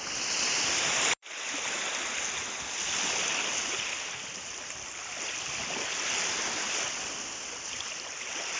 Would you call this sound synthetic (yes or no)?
no